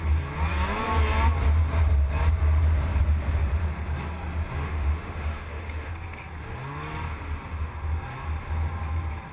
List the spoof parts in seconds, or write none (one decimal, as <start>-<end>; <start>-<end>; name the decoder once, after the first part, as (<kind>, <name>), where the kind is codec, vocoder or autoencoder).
4.6-5.9 (autoencoder, DAC-VAE)